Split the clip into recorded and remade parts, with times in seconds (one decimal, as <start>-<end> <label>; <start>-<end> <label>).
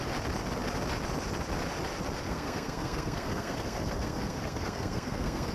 0.0-2.3 recorded; 2.3-5.5 remade